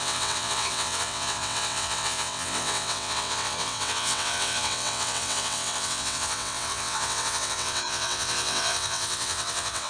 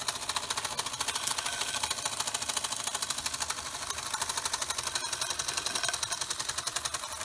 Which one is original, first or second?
second